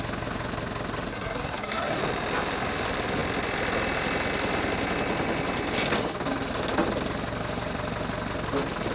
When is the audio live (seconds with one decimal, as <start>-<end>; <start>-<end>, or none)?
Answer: 0.0-1.1; 2.0-8.9